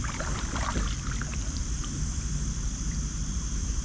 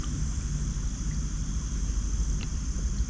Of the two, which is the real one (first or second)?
second